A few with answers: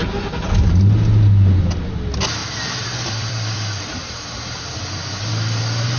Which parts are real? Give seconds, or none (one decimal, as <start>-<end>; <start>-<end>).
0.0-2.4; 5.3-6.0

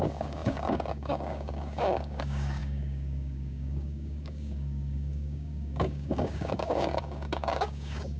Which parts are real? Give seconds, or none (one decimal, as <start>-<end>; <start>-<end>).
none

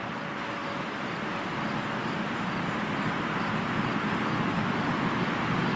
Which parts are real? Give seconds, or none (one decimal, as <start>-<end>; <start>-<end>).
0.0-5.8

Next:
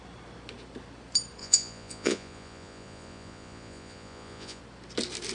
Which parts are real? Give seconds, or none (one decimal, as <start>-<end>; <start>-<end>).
0.0-1.4; 4.6-5.3